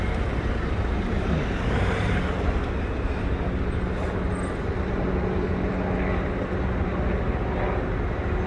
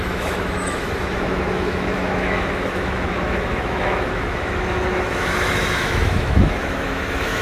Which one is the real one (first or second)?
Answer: first